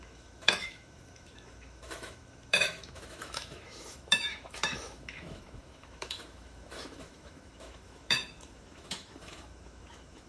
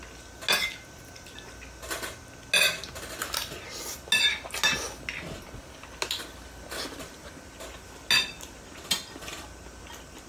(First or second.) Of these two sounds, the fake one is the first